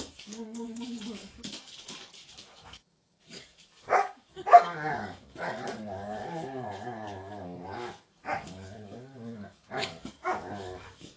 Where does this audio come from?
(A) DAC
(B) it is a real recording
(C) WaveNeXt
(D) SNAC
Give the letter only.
A